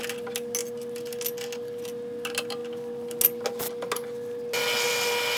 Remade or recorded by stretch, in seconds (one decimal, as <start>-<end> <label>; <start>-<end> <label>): 0.0-5.4 recorded